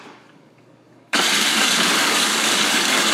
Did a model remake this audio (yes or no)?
yes